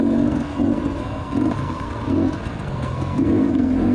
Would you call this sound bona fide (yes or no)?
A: no